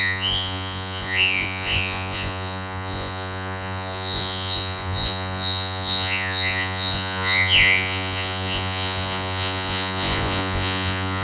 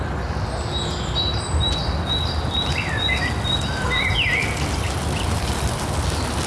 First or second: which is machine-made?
first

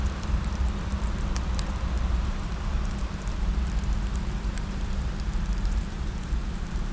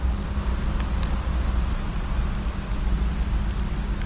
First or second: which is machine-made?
first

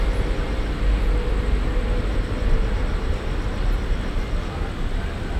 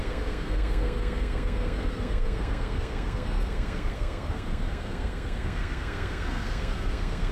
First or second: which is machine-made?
second